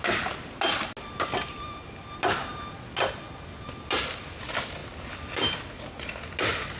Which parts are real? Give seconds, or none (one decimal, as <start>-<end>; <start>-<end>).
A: 0.0-6.8